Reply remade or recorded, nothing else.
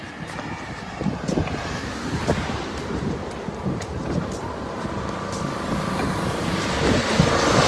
recorded